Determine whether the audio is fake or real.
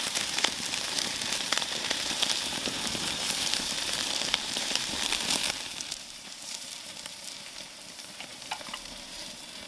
fake